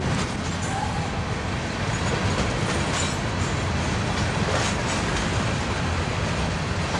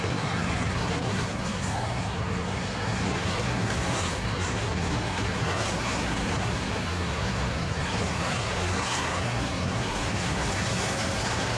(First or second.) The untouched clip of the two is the first